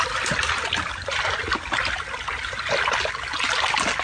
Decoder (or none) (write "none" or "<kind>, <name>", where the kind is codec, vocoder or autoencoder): none